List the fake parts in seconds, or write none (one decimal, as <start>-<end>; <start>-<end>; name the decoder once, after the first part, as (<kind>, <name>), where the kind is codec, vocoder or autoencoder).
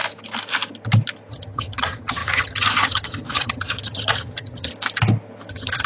1.3-4.7 (vocoder, HiFi-GAN); 5.5-5.9